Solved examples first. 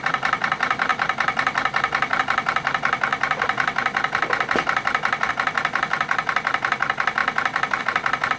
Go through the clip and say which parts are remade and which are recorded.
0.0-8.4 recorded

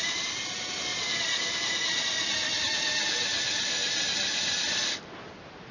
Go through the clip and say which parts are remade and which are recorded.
0.0-5.7 recorded

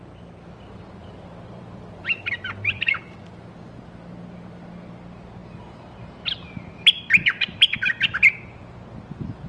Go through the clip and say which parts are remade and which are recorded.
0.0-1.0 recorded; 1.0-3.0 remade; 3.0-9.5 recorded

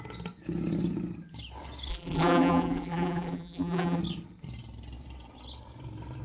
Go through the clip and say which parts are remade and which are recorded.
0.0-1.9 recorded; 1.9-4.0 remade; 4.0-6.2 recorded

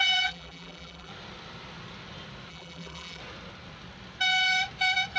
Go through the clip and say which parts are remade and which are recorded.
0.0-1.1 remade; 1.1-2.5 recorded; 2.5-3.2 remade; 3.2-5.2 recorded